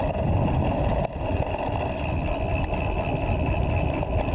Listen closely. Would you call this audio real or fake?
real